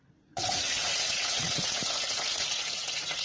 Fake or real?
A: fake